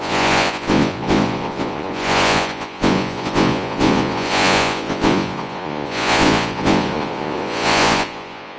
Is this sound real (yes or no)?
no